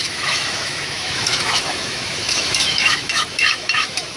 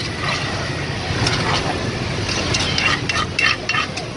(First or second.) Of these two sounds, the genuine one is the second